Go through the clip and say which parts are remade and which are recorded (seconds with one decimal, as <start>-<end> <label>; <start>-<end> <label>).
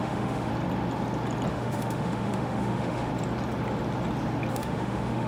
0.0-0.5 remade; 0.5-1.5 recorded; 1.5-3.1 remade; 3.1-4.5 recorded; 4.5-5.3 remade